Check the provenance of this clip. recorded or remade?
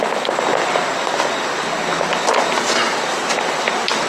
recorded